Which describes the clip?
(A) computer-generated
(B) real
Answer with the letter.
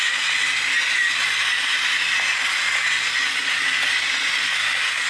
B